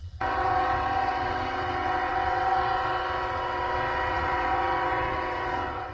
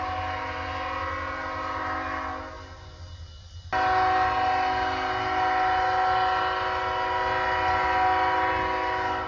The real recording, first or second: second